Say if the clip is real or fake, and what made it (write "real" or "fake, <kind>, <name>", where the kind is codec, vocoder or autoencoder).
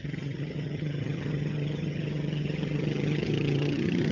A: fake, vocoder, HiFi-GAN